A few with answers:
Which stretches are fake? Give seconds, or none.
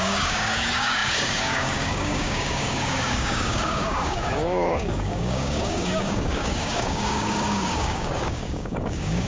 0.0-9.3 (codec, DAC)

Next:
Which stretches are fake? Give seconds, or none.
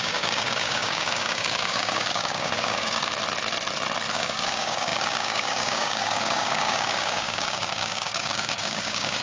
0.0-3.1 (codec, DAC); 4.1-9.2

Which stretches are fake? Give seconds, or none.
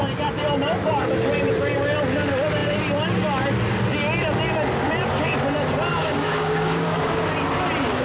5.9-7.3 (codec, DAC)